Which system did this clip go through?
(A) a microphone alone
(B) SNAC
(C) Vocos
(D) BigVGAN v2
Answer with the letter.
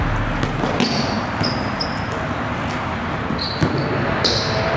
A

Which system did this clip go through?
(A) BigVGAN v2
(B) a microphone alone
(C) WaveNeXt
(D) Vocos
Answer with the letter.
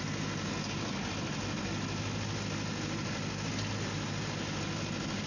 B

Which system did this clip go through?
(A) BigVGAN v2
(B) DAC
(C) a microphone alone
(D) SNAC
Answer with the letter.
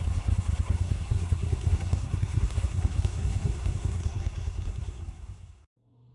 D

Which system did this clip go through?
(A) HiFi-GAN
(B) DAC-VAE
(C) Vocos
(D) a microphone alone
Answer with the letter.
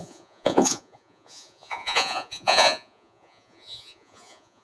C